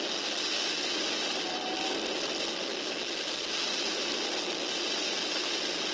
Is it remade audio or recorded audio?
recorded